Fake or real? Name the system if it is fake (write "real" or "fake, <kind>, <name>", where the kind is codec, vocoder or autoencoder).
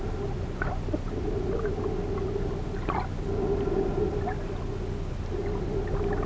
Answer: real